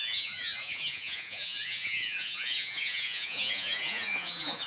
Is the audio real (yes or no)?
no